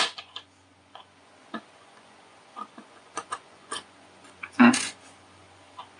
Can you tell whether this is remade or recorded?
remade